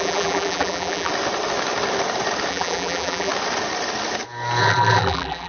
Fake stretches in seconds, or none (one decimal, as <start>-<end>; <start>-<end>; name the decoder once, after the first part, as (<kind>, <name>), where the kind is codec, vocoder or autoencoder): 0.0-1.1 (vocoder, BigVGAN v2); 2.5-3.3; 4.6-5.5